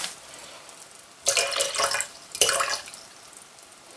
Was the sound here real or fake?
real